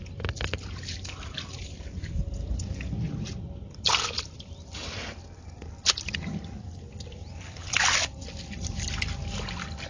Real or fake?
real